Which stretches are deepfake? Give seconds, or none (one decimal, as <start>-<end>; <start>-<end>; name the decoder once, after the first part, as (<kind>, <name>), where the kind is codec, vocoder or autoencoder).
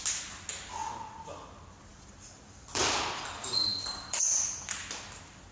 0.8-1.5 (vocoder, BigVGAN v2); 1.9-2.8; 3.7-4.3